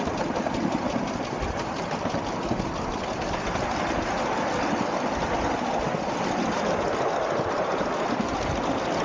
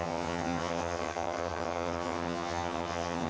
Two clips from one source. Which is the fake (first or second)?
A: second